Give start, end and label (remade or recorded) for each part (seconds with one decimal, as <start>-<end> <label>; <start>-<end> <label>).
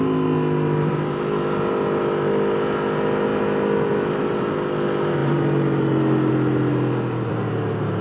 0.0-8.0 recorded